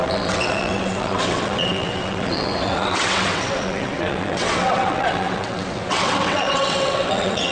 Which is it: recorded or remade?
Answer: remade